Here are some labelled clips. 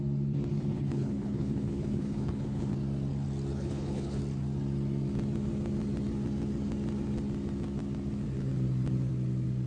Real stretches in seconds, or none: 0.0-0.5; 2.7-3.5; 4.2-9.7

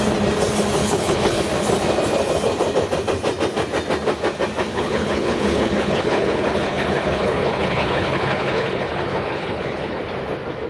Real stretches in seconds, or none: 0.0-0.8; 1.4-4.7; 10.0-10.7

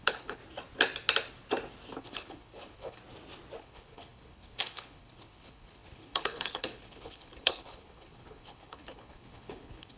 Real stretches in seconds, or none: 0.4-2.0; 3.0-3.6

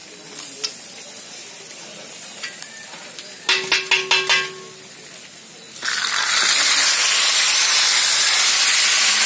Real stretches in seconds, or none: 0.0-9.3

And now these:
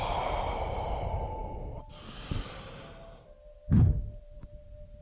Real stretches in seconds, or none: 0.0-5.0

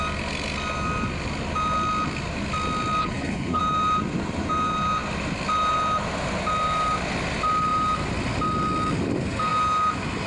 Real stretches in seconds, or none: 0.0-3.0; 3.6-10.3

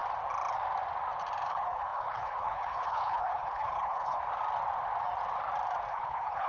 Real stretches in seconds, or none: 0.0-1.5; 4.2-5.9

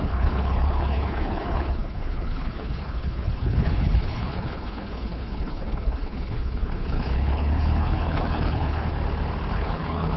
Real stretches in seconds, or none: 8.9-9.5